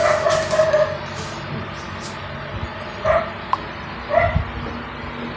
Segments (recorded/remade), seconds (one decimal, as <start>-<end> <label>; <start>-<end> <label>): 0.0-5.4 recorded